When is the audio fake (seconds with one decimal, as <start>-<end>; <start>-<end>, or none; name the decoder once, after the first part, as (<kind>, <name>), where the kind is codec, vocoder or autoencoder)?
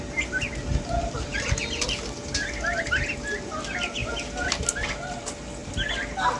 none